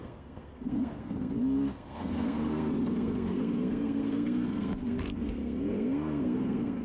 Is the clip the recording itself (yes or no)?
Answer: no